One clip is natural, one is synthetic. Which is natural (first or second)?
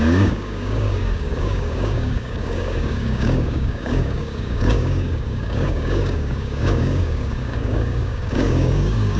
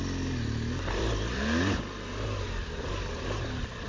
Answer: second